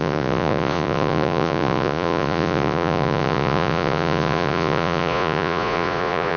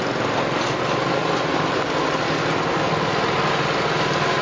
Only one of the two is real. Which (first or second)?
second